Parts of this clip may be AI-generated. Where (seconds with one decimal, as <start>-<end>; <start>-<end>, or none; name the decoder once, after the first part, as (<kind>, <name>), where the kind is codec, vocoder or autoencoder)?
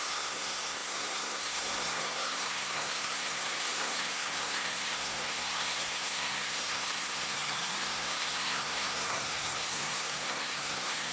0.0-11.1 (codec, SNAC)